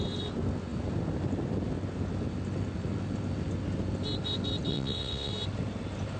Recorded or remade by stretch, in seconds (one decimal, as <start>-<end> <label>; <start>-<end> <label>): 0.0-4.7 recorded; 4.7-5.3 remade; 5.3-6.2 recorded